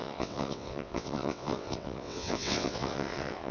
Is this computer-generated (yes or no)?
yes